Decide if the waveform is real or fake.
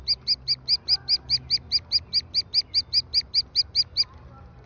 real